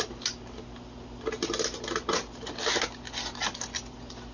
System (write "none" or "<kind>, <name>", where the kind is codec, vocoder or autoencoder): none